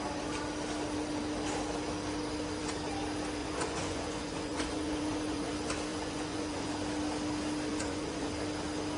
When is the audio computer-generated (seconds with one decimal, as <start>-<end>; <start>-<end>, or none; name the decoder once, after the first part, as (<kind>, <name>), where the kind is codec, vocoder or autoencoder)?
3.4-5.5 (vocoder, Vocos); 5.9-6.7; 7.7-8.3